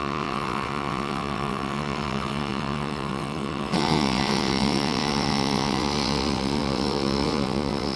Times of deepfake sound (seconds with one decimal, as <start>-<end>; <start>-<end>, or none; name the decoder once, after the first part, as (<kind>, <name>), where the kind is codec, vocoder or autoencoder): 0.0-8.0 (vocoder, WaveNeXt)